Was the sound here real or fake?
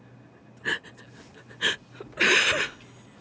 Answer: real